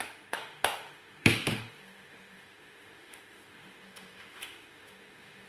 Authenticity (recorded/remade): remade